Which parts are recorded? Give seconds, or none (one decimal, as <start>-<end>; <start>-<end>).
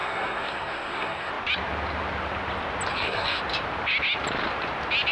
1.3-2.9; 3.4-5.1